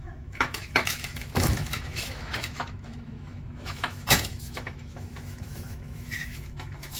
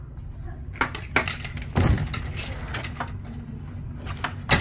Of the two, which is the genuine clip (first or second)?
second